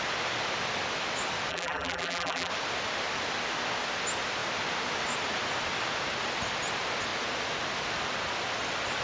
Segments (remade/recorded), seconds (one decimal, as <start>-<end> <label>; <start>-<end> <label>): 0.0-1.5 recorded; 1.5-2.5 remade; 2.5-9.0 recorded